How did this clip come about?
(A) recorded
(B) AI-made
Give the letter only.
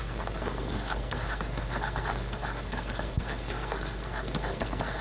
B